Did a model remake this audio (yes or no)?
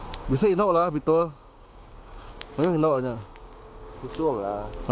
yes